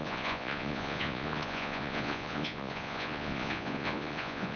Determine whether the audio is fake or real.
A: fake